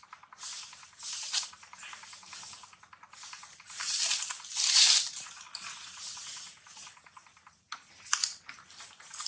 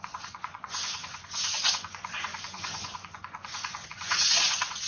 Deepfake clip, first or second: second